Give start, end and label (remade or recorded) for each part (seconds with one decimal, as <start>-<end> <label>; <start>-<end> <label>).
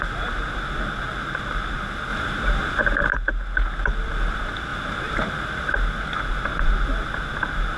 0.0-7.8 recorded